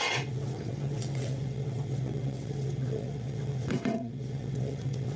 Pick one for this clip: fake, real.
fake